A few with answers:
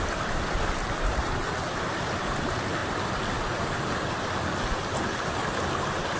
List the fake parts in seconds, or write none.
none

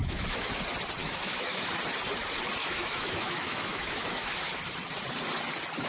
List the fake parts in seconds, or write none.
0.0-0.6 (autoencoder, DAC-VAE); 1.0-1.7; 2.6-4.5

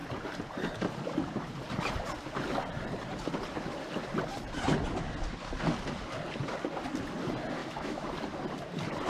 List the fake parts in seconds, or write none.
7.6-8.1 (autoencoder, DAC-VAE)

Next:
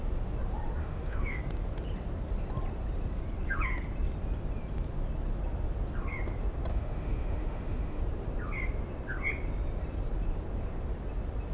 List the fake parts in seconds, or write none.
0.8-1.4 (autoencoder, DAC-VAE); 6.7-8.0

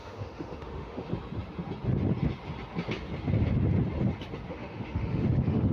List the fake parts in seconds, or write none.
0.0-1.1 (autoencoder, DAC-VAE); 4.5-5.7

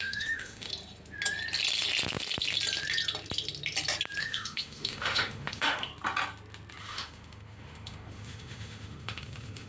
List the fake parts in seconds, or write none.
0.0-0.7 (autoencoder, DAC-VAE); 4.2-5.9; 6.8-9.7

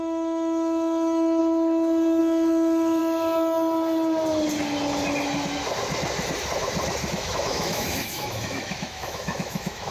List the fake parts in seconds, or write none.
0.0-1.4 (autoencoder, DAC-VAE); 2.2-3.0; 7.1-9.9